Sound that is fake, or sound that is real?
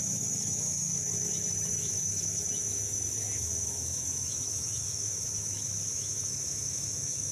fake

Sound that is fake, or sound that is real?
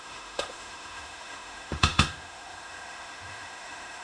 fake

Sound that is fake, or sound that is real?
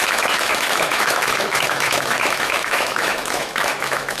fake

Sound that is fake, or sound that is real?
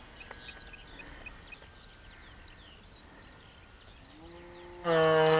real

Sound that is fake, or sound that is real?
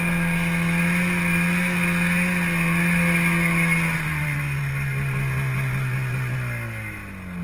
real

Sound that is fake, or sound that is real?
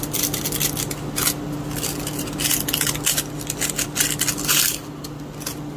real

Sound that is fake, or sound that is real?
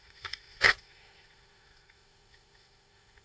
fake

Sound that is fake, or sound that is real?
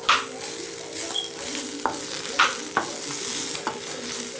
real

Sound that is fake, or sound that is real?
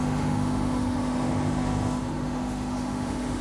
fake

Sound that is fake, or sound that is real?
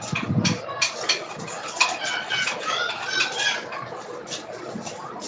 real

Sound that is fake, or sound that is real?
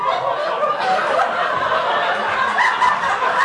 real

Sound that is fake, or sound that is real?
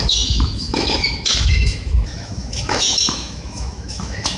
fake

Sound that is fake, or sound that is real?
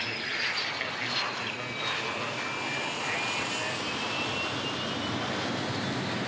real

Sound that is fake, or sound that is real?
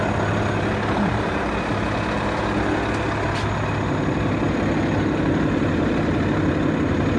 real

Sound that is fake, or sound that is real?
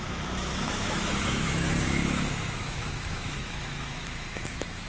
fake